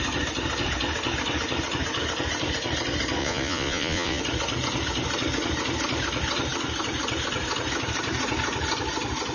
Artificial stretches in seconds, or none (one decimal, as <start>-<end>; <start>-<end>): 3.2-4.2

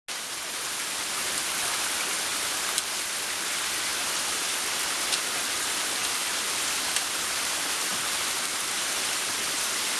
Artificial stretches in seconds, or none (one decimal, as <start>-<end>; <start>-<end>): none

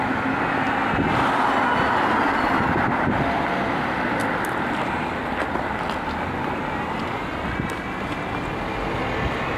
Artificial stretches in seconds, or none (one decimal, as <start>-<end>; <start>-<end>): none

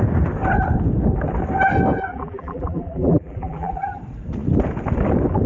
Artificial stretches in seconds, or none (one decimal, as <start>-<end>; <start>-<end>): 2.1-4.0

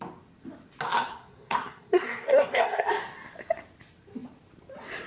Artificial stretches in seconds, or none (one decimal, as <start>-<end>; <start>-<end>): 1.1-2.9